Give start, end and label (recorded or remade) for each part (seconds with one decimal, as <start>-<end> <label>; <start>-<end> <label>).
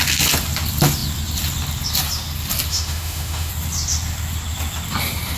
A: 0.0-2.7 recorded; 2.7-3.5 remade; 3.5-5.4 recorded